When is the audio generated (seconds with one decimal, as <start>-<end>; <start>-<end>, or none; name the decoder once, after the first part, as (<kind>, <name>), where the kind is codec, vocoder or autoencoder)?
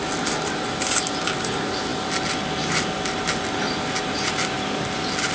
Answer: none